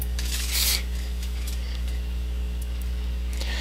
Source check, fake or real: fake